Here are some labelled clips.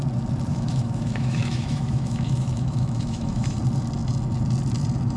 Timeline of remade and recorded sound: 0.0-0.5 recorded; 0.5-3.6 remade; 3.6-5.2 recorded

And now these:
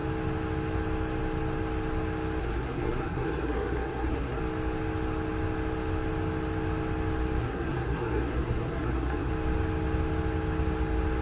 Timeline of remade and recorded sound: 0.0-2.4 recorded; 2.4-4.4 remade; 4.4-7.4 recorded; 7.4-9.3 remade; 9.3-11.2 recorded